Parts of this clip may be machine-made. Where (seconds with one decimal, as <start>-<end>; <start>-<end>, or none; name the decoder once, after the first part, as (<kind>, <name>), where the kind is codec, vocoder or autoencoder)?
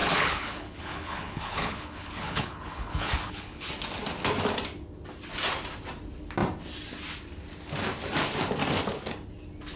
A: 0.0-3.7 (codec, HILCodec)